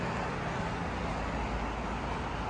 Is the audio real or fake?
real